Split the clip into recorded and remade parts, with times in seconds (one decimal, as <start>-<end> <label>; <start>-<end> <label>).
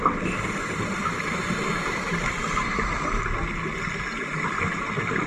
0.0-5.3 recorded